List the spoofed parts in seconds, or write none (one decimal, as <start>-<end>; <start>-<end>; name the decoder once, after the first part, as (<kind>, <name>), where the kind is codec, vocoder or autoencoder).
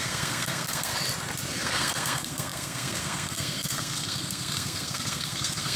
0.0-0.9 (codec, SNAC); 1.5-5.8